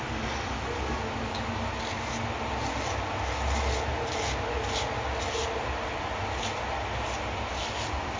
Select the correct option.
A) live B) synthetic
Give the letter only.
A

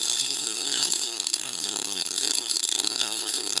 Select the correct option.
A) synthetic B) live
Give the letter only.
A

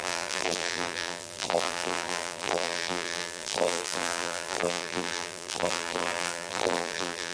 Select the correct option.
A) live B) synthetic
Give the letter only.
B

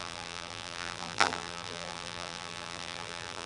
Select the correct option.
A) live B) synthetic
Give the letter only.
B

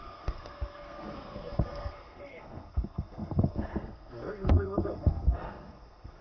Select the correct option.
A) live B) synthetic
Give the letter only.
B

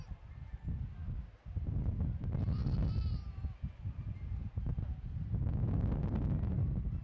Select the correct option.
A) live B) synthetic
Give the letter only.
A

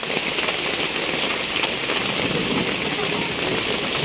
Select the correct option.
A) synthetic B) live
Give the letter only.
B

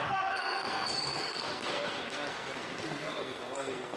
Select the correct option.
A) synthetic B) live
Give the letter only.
A